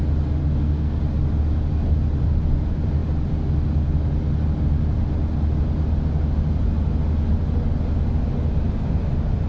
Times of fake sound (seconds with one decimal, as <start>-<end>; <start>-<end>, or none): 0.4-1.0